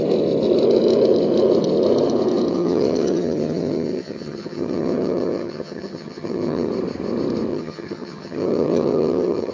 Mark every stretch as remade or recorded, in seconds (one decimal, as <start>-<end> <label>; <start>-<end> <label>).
0.0-2.5 recorded; 2.5-6.7 remade; 6.7-7.5 recorded; 7.5-9.5 remade